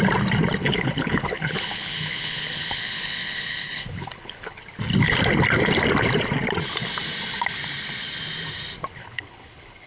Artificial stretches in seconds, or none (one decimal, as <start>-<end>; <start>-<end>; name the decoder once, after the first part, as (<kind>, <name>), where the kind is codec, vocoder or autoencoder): 0.6-4.6 (codec, HILCodec); 9.0-9.9